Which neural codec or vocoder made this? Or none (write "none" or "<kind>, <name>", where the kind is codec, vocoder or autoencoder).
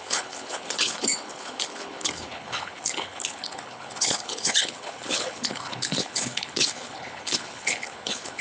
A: codec, HILCodec